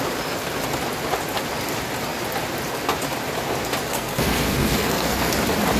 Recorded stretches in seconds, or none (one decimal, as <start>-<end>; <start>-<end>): 0.0-3.9; 5.3-5.8